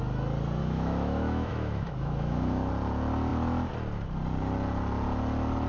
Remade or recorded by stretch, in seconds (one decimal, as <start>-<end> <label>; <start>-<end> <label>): 0.0-0.6 recorded; 0.6-2.7 remade; 2.7-5.7 recorded